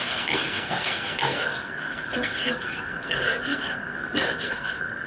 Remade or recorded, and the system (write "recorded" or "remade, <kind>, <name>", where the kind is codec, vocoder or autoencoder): remade, codec, SNAC